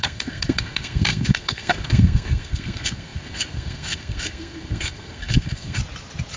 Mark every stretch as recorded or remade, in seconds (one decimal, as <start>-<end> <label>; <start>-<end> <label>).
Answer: 0.0-5.8 remade; 5.8-6.4 recorded